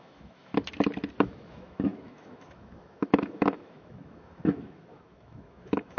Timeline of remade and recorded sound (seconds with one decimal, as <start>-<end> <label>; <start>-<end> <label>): 0.0-0.5 remade; 0.5-1.1 recorded; 1.1-6.0 remade